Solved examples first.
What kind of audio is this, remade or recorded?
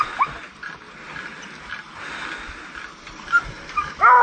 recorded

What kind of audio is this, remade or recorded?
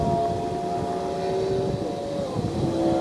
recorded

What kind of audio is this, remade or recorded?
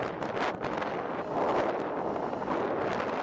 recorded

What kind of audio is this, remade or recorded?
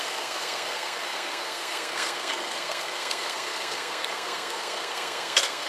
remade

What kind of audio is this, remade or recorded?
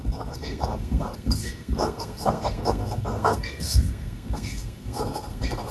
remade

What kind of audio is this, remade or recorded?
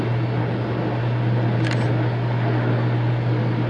recorded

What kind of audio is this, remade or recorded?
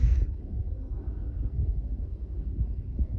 remade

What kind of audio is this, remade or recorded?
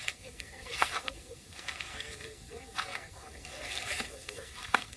remade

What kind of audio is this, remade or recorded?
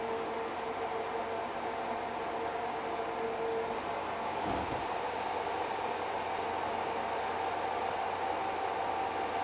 recorded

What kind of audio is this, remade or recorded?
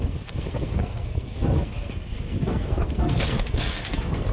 remade